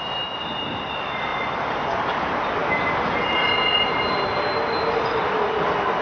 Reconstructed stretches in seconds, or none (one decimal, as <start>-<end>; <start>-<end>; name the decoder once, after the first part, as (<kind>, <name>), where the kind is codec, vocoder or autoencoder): none